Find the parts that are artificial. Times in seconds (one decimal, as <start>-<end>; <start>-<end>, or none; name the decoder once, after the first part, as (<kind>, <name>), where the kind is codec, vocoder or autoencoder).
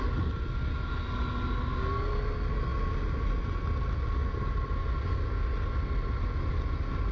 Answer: none